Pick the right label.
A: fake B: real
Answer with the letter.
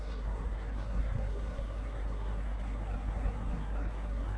A